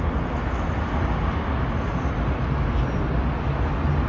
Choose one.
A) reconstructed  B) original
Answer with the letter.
B